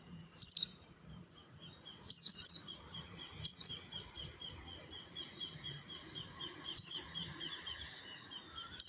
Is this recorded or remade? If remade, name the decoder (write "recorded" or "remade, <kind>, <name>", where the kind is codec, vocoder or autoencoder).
remade, vocoder, Vocos